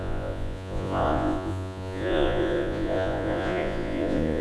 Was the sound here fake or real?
fake